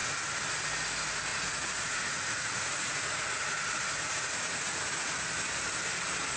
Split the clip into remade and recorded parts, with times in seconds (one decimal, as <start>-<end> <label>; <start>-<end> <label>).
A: 0.0-1.3 recorded; 1.3-5.1 remade; 5.1-6.4 recorded